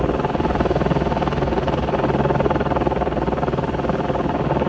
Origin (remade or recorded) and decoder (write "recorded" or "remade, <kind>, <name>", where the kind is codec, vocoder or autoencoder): recorded